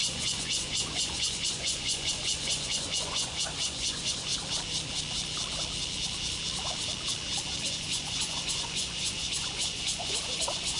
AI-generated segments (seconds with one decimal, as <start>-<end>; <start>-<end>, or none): 0.0-4.3; 7.7-10.8